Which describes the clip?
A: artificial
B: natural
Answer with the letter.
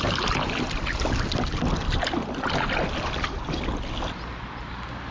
B